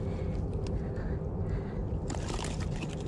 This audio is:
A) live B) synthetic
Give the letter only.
A